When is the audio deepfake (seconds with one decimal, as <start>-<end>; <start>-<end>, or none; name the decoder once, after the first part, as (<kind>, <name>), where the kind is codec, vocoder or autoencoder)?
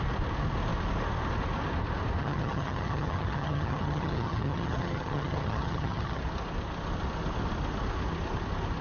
2.2-6.2 (vocoder, HiFi-GAN)